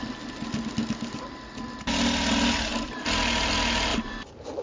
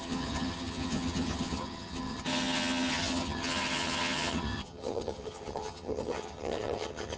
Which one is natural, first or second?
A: first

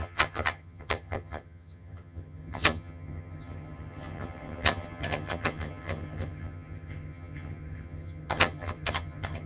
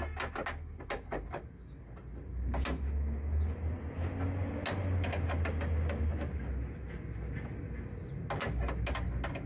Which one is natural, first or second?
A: second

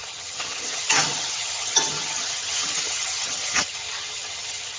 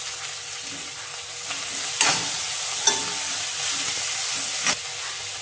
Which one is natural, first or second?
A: second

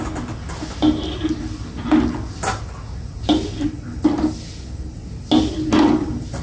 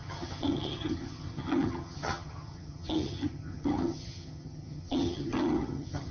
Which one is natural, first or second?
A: first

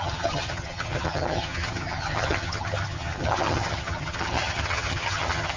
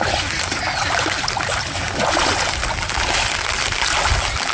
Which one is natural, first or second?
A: second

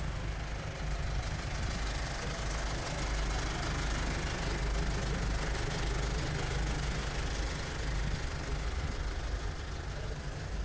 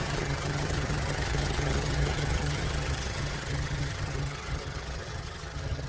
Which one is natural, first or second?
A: first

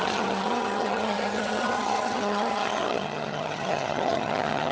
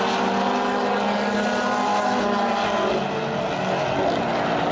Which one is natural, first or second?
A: second